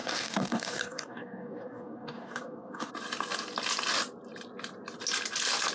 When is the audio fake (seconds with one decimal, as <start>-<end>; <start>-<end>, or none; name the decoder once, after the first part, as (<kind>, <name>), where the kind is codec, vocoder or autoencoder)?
0.0-2.9 (codec, DAC)